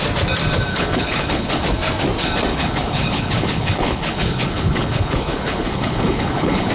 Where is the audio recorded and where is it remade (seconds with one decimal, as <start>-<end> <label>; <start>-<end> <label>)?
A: 0.0-0.7 recorded; 0.7-1.6 remade; 1.6-2.5 recorded; 2.5-6.7 remade